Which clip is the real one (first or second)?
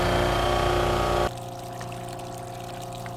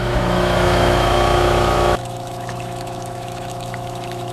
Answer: first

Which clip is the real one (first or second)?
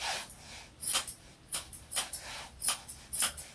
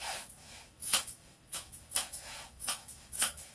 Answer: first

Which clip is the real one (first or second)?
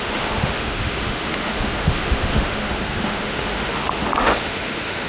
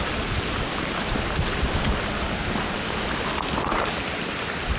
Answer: second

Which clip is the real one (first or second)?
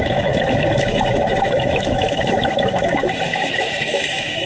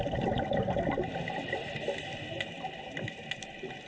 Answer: second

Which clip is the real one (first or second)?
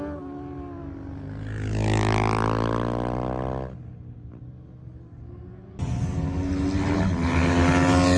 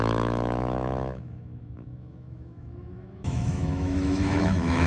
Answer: first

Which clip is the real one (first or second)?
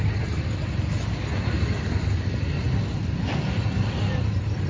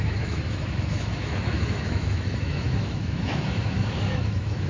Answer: first